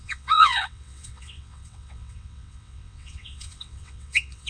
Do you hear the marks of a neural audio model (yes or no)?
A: yes